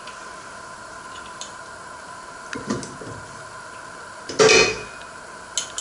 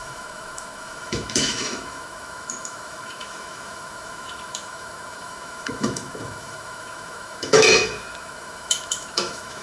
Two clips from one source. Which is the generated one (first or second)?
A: second